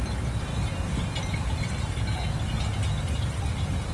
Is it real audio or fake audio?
real